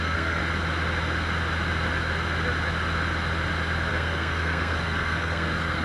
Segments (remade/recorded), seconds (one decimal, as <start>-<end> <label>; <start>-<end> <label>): 0.0-0.4 remade; 0.4-3.9 recorded; 3.9-5.8 remade